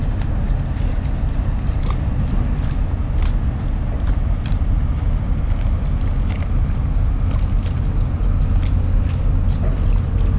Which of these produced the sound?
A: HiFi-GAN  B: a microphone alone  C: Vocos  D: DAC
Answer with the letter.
B